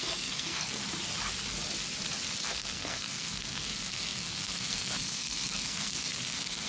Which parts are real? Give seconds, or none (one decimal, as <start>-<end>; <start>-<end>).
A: 0.8-2.4